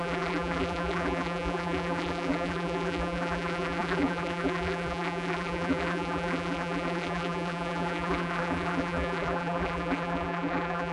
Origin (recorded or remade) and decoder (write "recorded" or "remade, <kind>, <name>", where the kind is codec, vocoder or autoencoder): remade, vocoder, BigVGAN v2